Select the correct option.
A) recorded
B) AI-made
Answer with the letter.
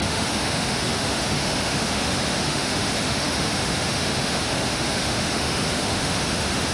B